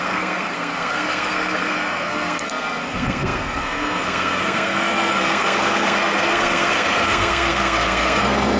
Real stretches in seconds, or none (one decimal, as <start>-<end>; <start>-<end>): none